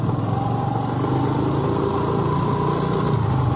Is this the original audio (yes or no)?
yes